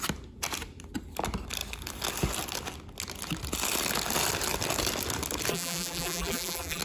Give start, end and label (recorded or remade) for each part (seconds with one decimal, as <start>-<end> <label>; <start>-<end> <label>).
0.0-5.5 recorded; 5.5-6.8 remade